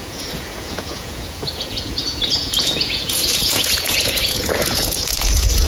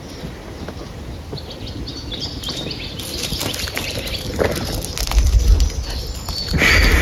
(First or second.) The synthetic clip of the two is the first